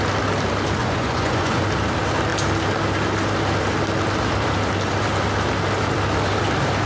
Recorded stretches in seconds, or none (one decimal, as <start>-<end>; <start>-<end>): 0.0-0.8; 1.6-6.9